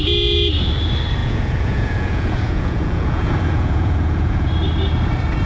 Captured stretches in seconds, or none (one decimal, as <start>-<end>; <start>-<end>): 0.0-1.2; 4.5-5.5